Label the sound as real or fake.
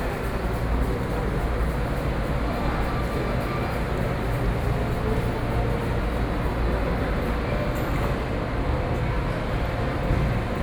real